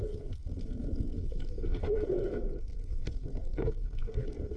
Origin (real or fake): fake